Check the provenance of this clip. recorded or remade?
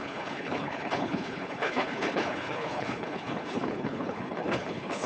remade